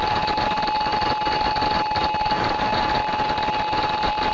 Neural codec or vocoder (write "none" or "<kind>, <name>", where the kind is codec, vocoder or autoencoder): vocoder, BigVGAN v2